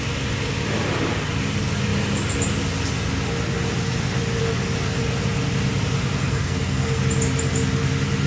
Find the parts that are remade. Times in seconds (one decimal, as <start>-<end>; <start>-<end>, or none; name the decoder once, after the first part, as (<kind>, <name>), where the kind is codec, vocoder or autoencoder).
6.2-7.0 (codec, SNAC)